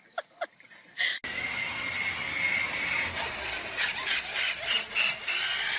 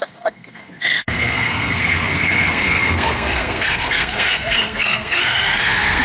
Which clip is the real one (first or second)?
first